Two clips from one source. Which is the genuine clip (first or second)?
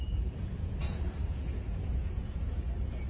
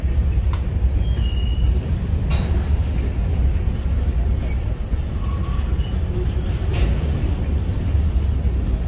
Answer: second